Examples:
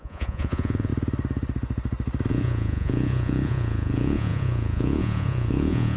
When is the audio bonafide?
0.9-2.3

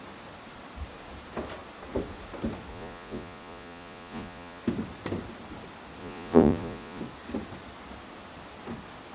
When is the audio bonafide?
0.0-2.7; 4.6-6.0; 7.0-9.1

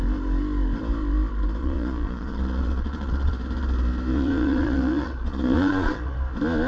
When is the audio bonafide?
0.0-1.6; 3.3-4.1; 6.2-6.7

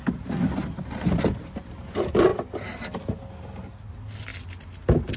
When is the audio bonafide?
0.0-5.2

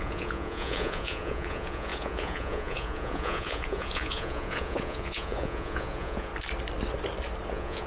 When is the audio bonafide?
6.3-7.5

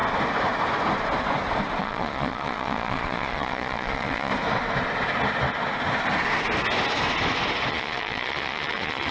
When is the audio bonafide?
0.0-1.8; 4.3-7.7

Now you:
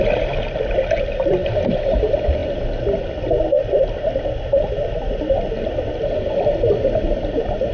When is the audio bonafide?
0.0-7.7